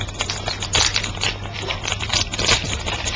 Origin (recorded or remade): remade